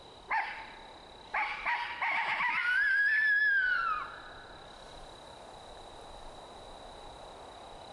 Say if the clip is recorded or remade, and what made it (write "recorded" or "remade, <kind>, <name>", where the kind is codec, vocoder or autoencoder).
recorded